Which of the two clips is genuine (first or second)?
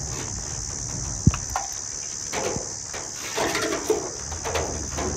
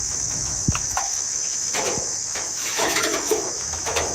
first